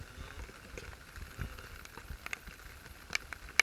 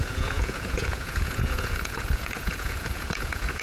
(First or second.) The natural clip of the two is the first